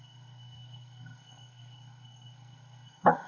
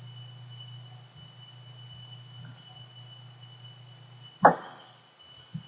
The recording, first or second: second